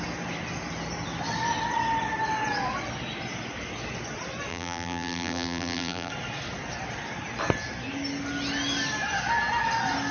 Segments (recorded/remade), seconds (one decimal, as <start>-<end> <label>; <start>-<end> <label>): 0.0-4.5 recorded; 4.5-6.1 remade; 6.1-10.1 recorded